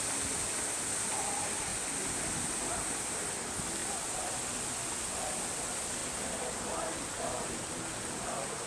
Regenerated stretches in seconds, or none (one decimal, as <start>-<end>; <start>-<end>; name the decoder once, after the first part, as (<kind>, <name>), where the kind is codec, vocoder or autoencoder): none